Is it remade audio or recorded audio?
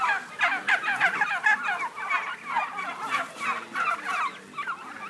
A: recorded